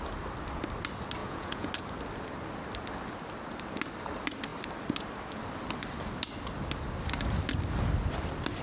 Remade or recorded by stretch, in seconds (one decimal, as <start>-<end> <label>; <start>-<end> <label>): 0.0-1.2 recorded; 1.2-1.7 remade; 1.7-8.6 recorded